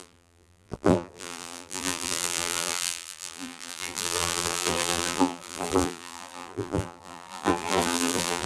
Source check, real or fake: fake